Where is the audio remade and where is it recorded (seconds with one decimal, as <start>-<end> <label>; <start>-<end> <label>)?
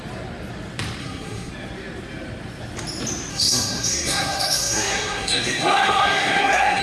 0.0-1.0 recorded; 1.0-1.5 remade; 1.5-3.3 recorded; 3.3-6.8 remade